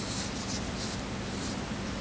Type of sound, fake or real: real